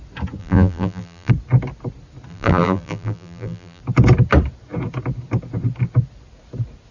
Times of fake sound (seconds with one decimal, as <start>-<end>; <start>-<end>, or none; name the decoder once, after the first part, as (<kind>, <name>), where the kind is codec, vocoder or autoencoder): 0.4-1.3 (vocoder, BigVGAN v2); 2.3-3.8